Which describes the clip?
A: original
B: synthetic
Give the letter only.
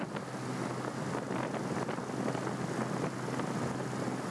A